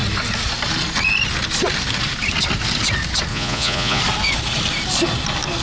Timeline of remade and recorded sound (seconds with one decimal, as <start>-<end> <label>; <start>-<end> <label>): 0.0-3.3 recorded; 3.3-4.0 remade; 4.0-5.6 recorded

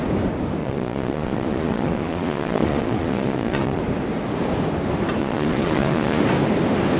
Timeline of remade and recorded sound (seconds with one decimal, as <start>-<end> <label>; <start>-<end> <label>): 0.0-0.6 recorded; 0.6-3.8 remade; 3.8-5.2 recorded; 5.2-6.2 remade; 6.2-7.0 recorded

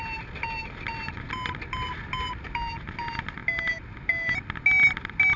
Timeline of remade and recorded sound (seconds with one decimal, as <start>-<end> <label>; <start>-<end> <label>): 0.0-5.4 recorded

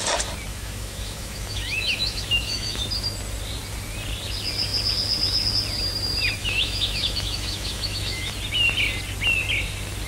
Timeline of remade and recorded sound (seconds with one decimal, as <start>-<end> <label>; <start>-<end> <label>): 0.0-0.5 recorded; 0.5-2.8 remade; 2.8-6.4 recorded; 6.4-8.3 remade; 8.3-10.1 recorded

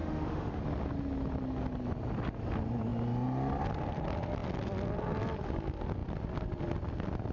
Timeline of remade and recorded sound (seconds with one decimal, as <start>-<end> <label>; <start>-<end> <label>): 0.0-0.6 remade; 0.6-7.3 recorded

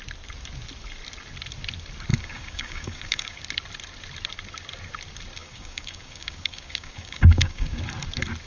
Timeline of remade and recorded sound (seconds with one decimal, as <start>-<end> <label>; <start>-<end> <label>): 0.0-2.1 recorded; 2.1-3.4 remade; 3.4-5.4 recorded; 5.4-7.8 remade; 7.8-8.5 recorded